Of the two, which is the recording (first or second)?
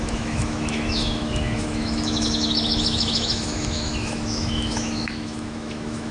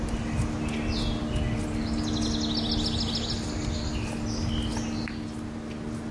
second